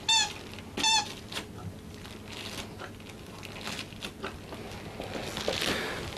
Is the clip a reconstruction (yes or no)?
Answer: no